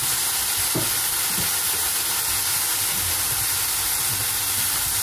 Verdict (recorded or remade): recorded